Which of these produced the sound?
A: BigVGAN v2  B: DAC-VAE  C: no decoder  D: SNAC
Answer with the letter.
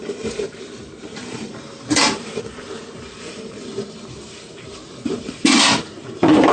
A